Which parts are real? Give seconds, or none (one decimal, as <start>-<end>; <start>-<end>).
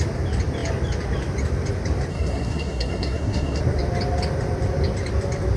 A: 0.0-2.1; 3.6-5.6